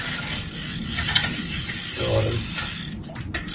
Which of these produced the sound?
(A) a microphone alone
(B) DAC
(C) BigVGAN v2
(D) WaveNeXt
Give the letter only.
A